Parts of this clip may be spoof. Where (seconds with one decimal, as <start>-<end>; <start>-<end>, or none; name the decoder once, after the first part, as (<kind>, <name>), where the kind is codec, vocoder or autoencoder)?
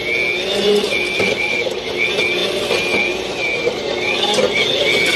0.5-1.9 (vocoder, BigVGAN v2)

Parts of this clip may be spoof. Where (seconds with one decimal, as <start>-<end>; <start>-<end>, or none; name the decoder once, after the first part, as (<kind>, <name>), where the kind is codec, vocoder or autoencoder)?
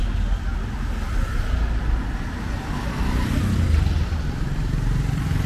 none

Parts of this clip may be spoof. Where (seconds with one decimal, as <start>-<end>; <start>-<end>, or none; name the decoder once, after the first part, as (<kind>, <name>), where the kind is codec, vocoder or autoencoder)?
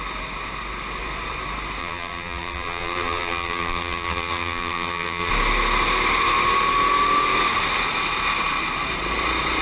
1.8-5.3 (vocoder, BigVGAN v2)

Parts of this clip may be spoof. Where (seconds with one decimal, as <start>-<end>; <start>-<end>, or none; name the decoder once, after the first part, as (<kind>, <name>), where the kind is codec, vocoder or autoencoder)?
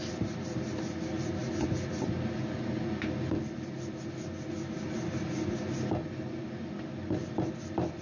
none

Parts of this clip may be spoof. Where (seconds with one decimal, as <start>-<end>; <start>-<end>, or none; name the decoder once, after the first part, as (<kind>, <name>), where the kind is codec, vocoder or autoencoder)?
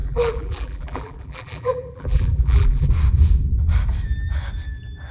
0.0-2.9 (vocoder, BigVGAN v2)